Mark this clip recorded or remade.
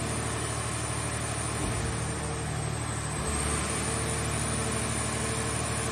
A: recorded